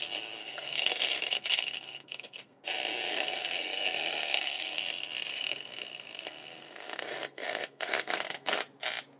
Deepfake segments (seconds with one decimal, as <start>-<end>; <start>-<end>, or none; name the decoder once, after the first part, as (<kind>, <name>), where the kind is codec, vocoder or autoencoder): 0.4-2.6 (codec, SNAC); 3.1-4.8; 5.3-8.6